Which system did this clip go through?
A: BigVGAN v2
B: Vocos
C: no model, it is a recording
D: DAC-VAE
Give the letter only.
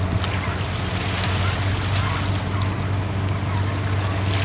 C